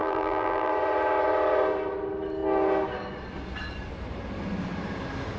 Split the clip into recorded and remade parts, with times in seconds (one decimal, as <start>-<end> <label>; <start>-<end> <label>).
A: 0.0-0.7 remade; 0.7-5.4 recorded